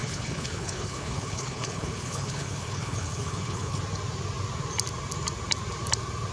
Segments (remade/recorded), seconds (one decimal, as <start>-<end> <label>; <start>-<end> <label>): 0.0-3.8 remade; 3.8-6.3 recorded